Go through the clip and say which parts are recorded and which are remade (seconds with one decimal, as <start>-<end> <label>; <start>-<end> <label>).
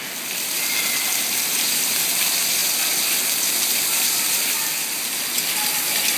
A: 0.0-1.4 recorded; 1.4-2.1 remade; 2.1-6.2 recorded